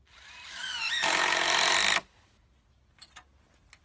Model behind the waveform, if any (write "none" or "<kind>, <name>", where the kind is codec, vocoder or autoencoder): none